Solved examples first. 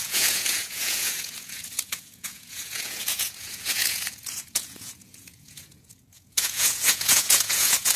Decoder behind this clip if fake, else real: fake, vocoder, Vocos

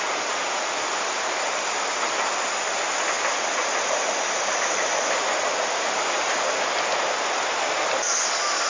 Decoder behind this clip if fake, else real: real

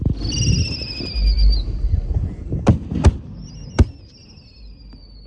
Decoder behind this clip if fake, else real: real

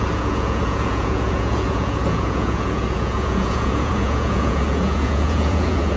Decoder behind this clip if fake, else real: fake, vocoder, Vocos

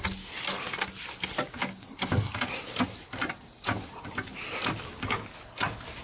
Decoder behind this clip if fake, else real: real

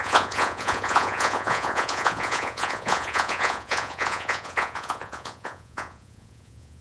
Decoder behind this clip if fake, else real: fake, vocoder, Vocos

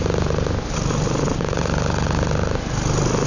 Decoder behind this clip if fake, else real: real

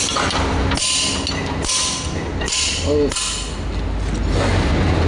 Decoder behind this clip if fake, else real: real